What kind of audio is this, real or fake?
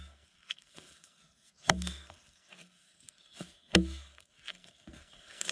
fake